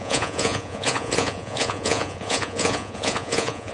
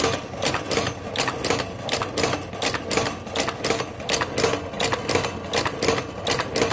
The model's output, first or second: first